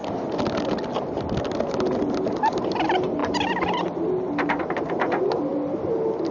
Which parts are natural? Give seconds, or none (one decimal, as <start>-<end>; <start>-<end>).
0.0-6.3